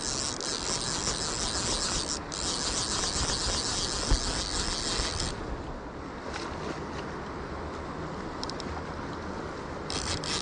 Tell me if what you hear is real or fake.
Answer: real